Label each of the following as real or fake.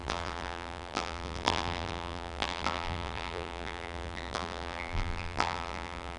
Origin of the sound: fake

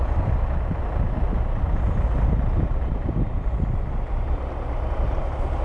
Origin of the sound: real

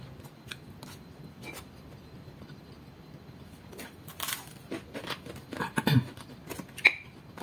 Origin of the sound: real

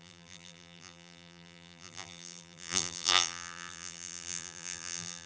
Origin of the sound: fake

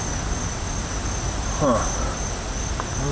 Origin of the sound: real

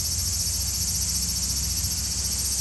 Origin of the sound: real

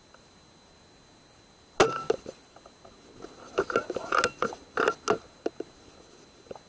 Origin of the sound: real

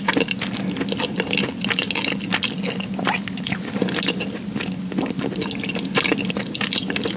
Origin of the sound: real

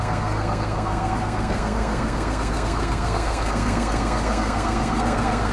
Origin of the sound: fake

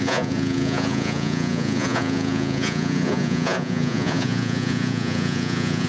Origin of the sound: fake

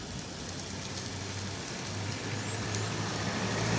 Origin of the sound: real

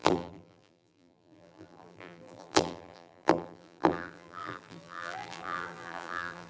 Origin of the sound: fake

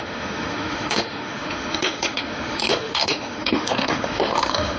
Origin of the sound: fake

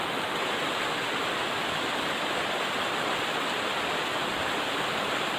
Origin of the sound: real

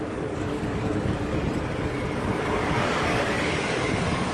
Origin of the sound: fake